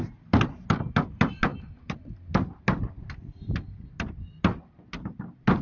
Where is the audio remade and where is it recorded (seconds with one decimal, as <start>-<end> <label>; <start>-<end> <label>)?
0.0-5.6 recorded